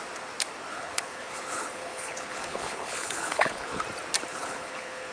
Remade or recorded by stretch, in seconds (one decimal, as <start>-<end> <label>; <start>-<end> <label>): 0.0-0.7 recorded; 0.7-3.8 remade; 3.8-4.3 recorded; 4.3-5.1 remade